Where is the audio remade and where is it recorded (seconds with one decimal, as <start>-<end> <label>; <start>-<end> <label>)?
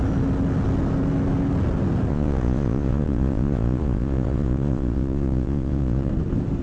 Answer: 0.0-2.1 recorded; 2.1-6.1 remade; 6.1-6.6 recorded